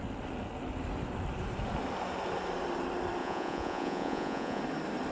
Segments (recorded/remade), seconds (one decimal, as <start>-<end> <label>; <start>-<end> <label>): 0.0-3.2 recorded; 3.2-4.6 remade; 4.6-5.1 recorded